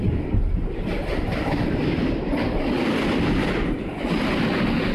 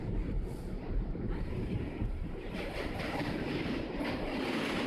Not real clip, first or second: second